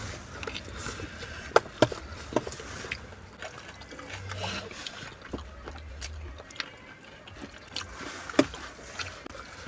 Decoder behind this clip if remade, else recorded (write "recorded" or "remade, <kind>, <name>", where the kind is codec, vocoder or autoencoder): recorded